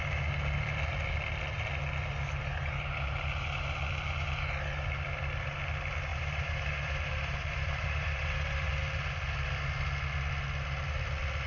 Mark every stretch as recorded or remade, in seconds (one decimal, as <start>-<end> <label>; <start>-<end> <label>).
0.0-6.1 recorded; 6.1-8.7 remade; 8.7-11.5 recorded